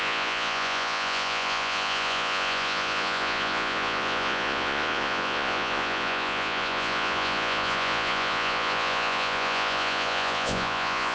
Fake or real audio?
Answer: fake